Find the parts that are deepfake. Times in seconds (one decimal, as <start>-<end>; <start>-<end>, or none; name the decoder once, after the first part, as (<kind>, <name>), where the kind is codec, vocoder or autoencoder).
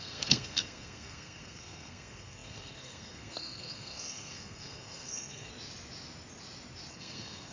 0.0-5.5 (codec, SNAC); 6.9-7.5